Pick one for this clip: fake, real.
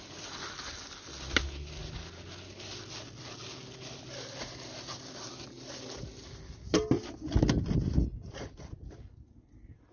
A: real